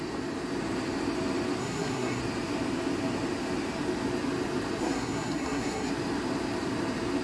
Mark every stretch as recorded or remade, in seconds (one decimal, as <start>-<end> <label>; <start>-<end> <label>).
0.0-1.6 recorded; 1.6-2.2 remade; 2.2-4.8 recorded; 4.8-5.9 remade; 5.9-7.2 recorded